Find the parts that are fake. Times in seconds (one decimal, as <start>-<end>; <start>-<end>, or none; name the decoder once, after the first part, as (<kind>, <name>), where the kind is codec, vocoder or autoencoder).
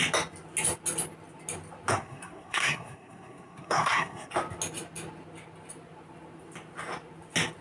1.9-4.3 (codec, SNAC)